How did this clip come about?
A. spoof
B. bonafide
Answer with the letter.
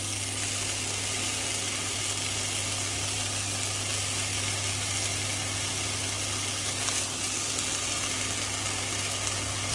B